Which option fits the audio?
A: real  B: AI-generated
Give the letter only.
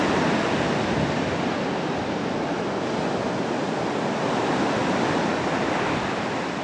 A